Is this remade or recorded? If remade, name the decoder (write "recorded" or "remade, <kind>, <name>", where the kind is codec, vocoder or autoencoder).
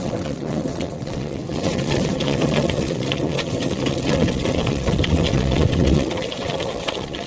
remade, vocoder, WaveNeXt